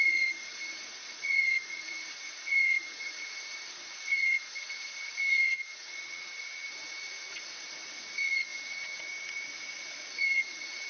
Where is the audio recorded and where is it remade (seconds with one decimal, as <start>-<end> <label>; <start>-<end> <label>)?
0.0-10.9 remade